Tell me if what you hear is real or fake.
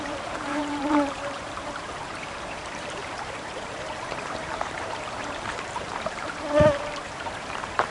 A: fake